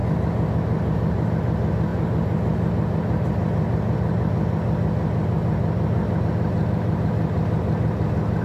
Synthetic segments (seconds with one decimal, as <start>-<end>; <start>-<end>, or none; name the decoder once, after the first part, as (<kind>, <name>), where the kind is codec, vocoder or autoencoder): none